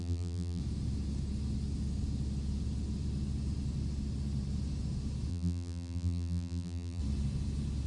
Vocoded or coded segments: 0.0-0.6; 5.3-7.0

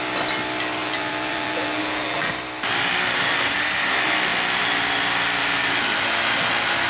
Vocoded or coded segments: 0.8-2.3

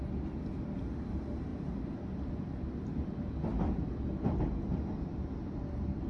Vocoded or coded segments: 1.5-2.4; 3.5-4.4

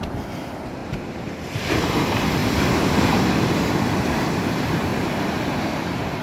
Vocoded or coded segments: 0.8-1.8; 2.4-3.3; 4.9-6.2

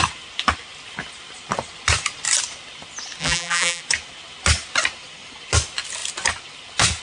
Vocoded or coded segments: 3.2-3.8

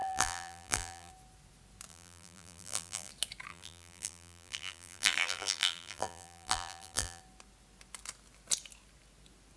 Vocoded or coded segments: 0.0-1.1; 1.9-3.1; 3.5-7.2

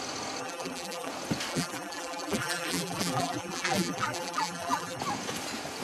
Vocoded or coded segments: 0.4-1.1; 1.5-5.0

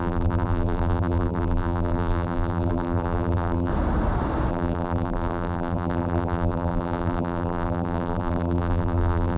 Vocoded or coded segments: 0.0-3.7; 4.5-9.4